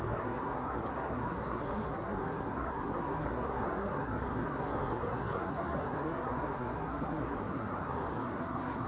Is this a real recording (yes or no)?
no